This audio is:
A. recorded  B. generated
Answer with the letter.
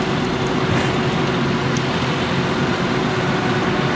A